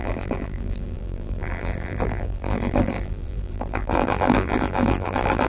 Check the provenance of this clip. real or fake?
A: fake